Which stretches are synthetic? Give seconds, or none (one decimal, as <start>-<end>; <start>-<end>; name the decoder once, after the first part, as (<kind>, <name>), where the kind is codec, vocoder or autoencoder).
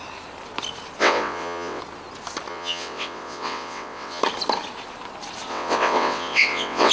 1.0-1.8 (vocoder, WaveNeXt); 2.5-4.2; 5.5-6.9